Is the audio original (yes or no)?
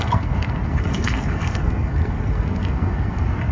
no